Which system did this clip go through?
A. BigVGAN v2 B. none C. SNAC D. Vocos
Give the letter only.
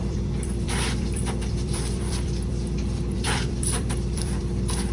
A